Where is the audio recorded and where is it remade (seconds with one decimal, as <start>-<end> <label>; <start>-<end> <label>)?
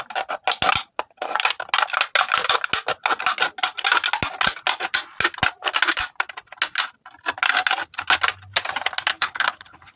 0.0-9.1 recorded; 9.1-10.0 remade